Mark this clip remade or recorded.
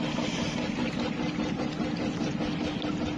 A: recorded